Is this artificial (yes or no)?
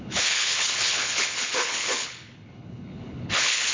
yes